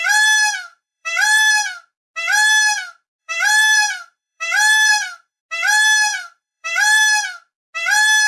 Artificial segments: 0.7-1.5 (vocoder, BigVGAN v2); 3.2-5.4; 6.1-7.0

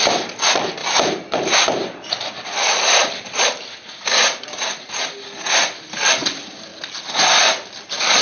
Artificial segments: 0.8-4.9 (vocoder, BigVGAN v2); 6.7-7.5

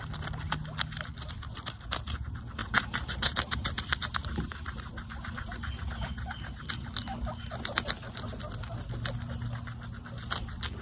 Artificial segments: 2.6-7.5 (vocoder, BigVGAN v2)

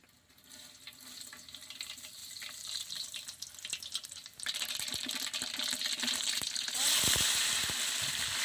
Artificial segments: none

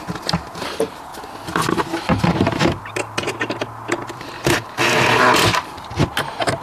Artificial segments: none

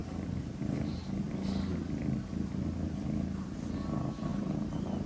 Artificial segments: 0.0-1.2 (vocoder, BigVGAN v2); 4.3-5.1

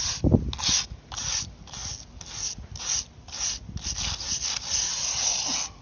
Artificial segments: none

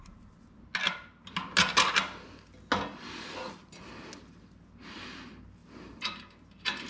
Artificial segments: 5.6-6.2 (vocoder, BigVGAN v2)